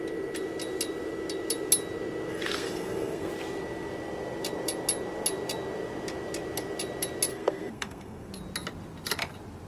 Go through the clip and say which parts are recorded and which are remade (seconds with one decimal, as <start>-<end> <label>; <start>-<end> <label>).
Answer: 0.0-2.3 recorded; 2.3-3.3 remade; 3.3-7.3 recorded; 7.3-8.3 remade; 8.3-9.7 recorded

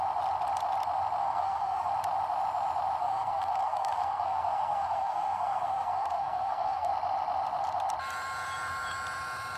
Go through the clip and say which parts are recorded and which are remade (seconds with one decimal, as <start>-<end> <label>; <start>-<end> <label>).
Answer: 0.0-1.2 recorded; 1.2-1.9 remade; 1.9-3.0 recorded; 3.0-6.9 remade; 6.9-9.6 recorded